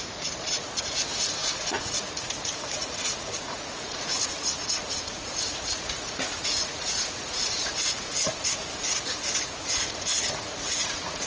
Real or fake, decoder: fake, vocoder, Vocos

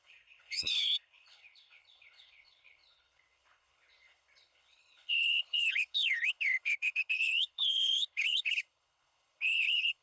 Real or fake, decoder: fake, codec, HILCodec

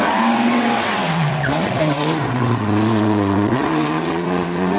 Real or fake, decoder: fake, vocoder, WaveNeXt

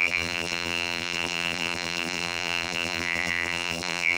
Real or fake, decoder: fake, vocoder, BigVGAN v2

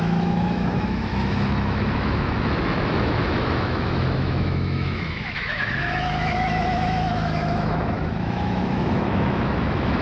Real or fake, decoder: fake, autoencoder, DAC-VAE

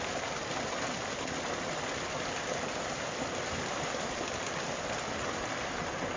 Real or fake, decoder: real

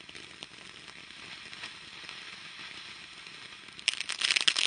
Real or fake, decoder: real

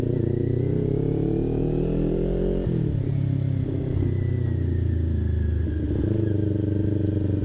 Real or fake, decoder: real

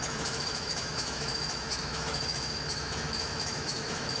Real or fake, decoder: fake, autoencoder, DAC-VAE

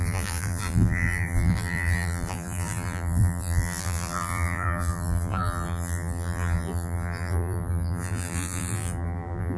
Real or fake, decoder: fake, vocoder, BigVGAN v2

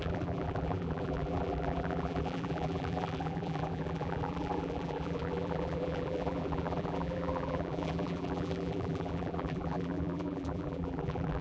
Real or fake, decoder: fake, vocoder, BigVGAN v2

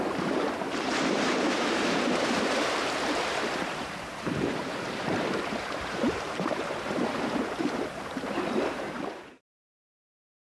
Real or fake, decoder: fake, vocoder, BigVGAN v2